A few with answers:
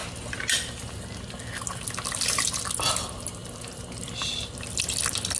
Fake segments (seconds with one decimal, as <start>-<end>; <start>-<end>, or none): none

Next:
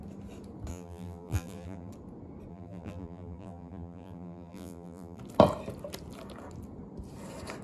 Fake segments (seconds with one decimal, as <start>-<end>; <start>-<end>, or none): 0.7-1.9; 2.5-5.2

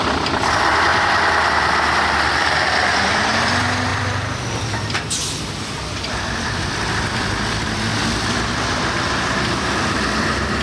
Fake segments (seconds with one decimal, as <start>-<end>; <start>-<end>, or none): 0.0-0.9; 1.9-10.6

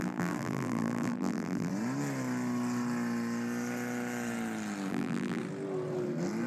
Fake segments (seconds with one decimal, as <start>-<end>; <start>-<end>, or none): 0.0-1.7; 4.9-5.4

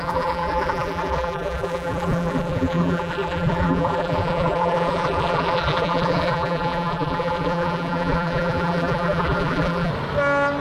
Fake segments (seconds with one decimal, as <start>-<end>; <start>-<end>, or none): 0.0-9.9